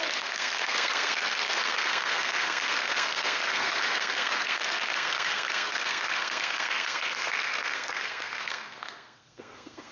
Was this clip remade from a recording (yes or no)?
yes